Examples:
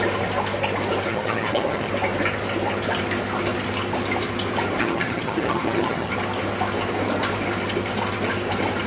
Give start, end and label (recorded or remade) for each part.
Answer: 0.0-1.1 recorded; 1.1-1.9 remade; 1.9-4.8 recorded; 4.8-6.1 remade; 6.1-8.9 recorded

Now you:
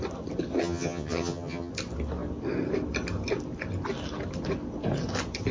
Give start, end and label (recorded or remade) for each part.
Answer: 0.0-0.6 recorded; 0.6-1.7 remade; 1.7-5.5 recorded